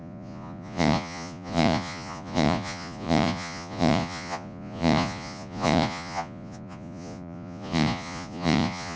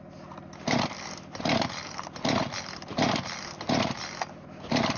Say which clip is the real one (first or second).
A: second